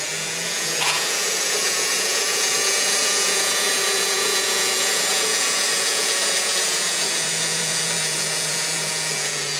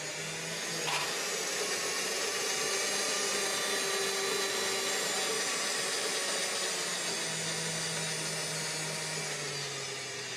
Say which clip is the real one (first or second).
second